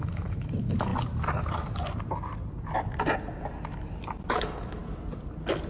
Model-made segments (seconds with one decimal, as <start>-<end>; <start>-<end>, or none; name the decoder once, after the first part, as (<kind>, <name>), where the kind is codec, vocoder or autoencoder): 0.0-0.9 (autoencoder, DAC-VAE); 4.3-4.8